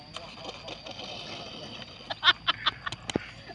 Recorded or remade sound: recorded